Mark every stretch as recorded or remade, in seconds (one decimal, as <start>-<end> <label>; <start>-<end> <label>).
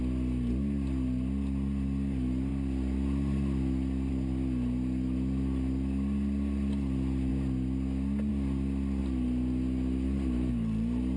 0.0-11.2 recorded